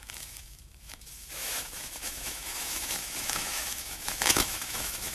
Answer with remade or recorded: remade